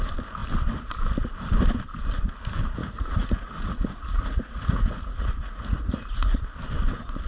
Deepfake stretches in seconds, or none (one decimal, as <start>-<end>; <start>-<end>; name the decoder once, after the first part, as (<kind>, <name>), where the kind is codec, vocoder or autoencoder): 2.8-6.5 (vocoder, Vocos)